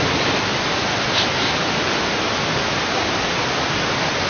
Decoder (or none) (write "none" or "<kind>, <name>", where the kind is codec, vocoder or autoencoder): none